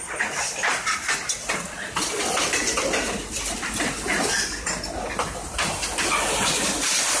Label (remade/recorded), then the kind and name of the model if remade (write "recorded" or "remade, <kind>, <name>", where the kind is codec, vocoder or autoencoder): remade, vocoder, BigVGAN v2